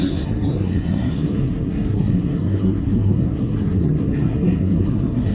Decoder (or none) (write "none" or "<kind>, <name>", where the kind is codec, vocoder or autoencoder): codec, SNAC